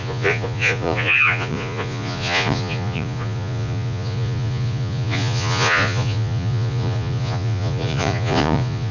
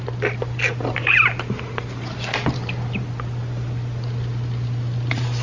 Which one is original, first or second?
second